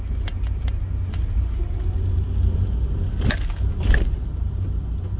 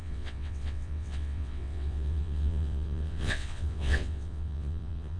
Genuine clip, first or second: first